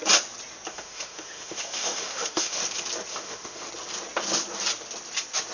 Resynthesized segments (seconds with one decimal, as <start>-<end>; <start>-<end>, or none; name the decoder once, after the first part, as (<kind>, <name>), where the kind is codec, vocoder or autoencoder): 0.7-2.6 (autoencoder, DAC-VAE); 3.1-3.7

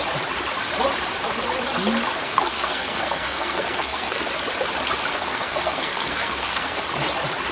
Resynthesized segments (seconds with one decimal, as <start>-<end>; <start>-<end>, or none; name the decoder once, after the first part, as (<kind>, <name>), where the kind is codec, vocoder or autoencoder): 2.2-4.2 (codec, SNAC); 5.1-6.8

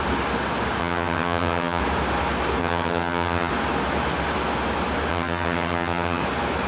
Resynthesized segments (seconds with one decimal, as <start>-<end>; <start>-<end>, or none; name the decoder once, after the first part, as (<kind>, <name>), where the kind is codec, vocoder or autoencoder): 0.8-1.8 (vocoder, HiFi-GAN); 2.6-3.5; 5.1-6.2